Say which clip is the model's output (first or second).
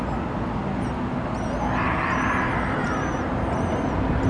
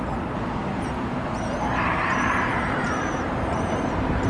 second